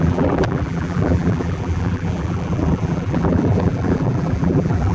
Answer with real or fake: fake